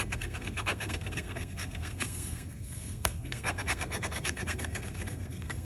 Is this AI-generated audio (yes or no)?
yes